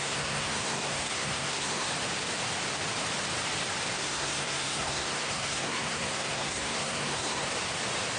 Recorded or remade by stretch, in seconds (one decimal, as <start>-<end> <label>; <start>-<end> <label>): 0.0-1.9 remade; 1.9-4.0 recorded; 4.0-7.5 remade; 7.5-8.2 recorded